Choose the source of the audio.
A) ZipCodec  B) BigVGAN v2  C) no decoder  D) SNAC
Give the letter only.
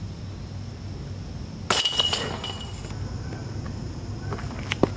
C